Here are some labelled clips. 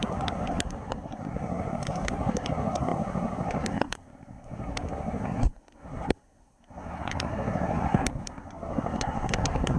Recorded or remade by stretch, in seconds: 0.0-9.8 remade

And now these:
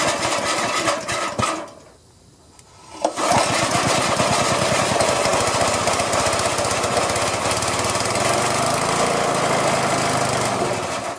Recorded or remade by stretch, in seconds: 0.0-11.2 recorded

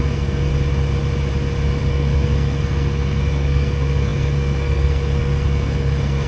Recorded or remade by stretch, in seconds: 0.0-0.5 remade; 0.5-1.9 recorded; 1.9-6.3 remade

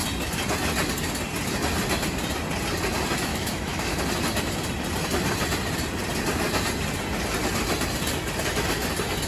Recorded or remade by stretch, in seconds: 0.0-3.3 recorded; 3.3-4.0 remade; 4.0-9.3 recorded

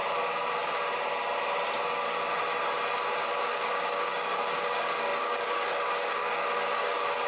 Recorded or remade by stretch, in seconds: 0.0-3.5 recorded; 3.5-7.3 remade

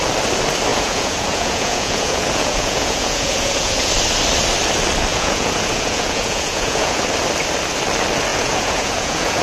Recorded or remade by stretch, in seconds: 0.0-0.7 recorded; 0.7-3.9 remade; 3.9-5.1 recorded; 5.1-7.0 remade; 7.0-8.3 recorded; 8.3-9.4 remade